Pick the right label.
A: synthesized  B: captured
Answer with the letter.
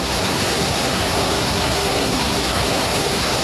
A